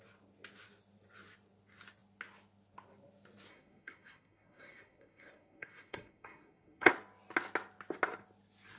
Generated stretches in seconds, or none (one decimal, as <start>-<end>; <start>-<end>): 3.5-6.9